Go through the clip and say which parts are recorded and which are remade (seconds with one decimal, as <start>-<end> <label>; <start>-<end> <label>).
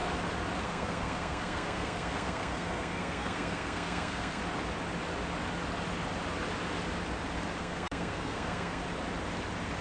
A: 0.0-0.6 recorded; 0.6-4.4 remade; 4.4-7.6 recorded; 7.6-8.8 remade; 8.8-9.8 recorded